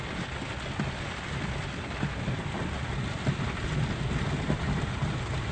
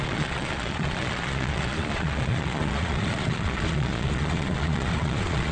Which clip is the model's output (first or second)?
second